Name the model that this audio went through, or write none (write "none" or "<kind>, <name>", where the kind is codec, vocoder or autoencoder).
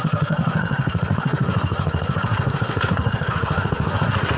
codec, SNAC